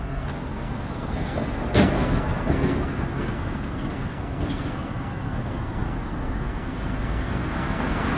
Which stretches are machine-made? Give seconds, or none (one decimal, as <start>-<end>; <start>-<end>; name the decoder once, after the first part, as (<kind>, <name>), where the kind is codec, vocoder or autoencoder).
0.0-8.2 (codec, SNAC)